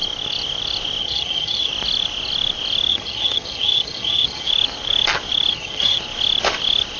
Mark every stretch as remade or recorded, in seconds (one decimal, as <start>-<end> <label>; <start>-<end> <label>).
0.0-1.0 recorded; 1.0-1.7 remade; 1.7-2.9 recorded; 2.9-4.5 remade; 4.5-5.5 recorded; 5.5-6.0 remade; 6.0-7.0 recorded